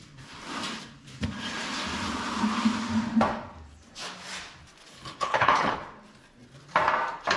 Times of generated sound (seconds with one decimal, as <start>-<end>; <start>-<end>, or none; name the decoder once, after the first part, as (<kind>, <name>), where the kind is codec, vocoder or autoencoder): 4.9-5.8 (codec, HILCodec)